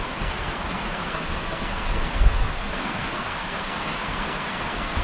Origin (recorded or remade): remade